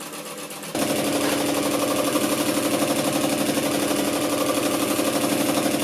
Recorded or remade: recorded